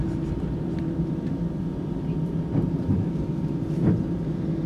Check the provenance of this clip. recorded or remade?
recorded